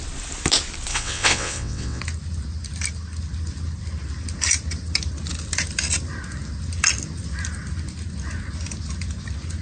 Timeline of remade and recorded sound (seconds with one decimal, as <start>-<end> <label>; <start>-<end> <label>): 0.0-0.9 recorded; 0.9-2.0 remade; 2.0-9.6 recorded

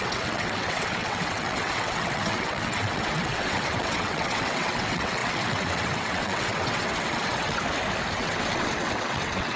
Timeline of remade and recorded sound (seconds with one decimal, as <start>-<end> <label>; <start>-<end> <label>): 0.0-7.6 remade; 7.6-8.1 recorded; 8.1-9.6 remade

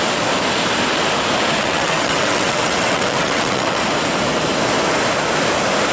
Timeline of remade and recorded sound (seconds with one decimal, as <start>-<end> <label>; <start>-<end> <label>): 0.0-1.6 recorded; 1.6-3.8 remade; 3.8-5.9 recorded

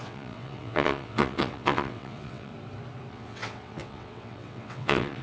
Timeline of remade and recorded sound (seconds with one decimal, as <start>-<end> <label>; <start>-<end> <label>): 0.0-2.5 remade; 2.5-3.1 recorded; 3.1-5.2 remade

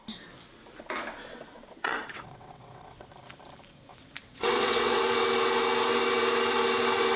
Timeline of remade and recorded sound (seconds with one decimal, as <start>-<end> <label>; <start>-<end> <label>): 0.0-1.3 recorded; 1.3-3.1 remade; 3.1-3.9 recorded; 3.9-5.0 remade; 5.0-7.2 recorded